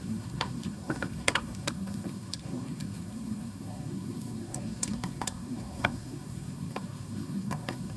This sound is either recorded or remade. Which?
remade